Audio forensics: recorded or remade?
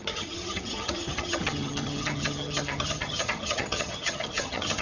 remade